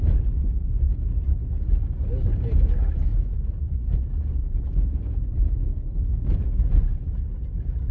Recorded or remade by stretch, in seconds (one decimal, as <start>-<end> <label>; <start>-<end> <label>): 0.0-3.1 recorded; 3.1-5.2 remade; 5.2-6.9 recorded; 6.9-7.9 remade